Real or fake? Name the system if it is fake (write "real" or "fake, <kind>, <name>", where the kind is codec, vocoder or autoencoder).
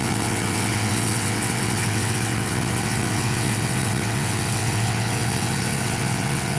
fake, vocoder, WaveNeXt